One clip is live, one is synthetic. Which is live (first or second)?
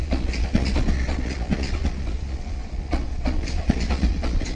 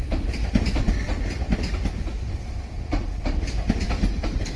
second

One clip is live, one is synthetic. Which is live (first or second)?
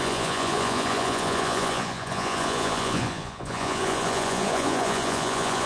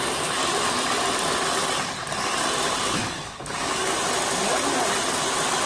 second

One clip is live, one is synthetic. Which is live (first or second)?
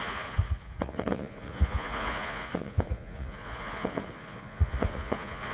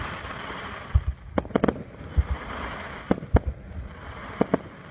second